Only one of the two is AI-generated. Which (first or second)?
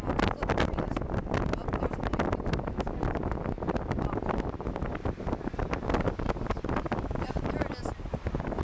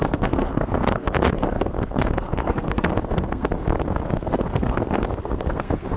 second